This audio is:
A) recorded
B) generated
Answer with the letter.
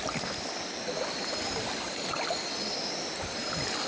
A